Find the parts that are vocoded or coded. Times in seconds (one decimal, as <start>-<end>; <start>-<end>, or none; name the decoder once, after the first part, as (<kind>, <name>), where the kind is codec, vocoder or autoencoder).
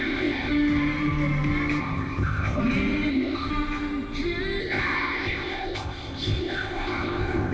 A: 0.0-0.5 (codec, ZipCodec); 1.8-2.6; 3.1-3.5; 4.6-7.5